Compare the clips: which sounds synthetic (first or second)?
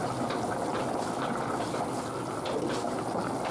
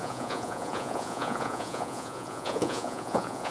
second